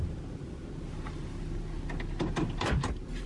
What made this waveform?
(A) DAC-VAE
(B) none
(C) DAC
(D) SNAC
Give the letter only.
B